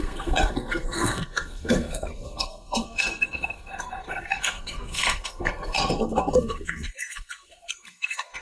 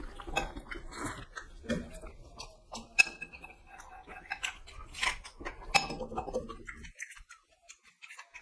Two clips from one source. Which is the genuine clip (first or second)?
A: second